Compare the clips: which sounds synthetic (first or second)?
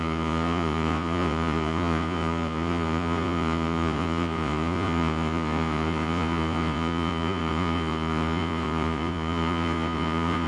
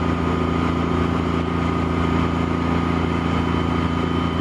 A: first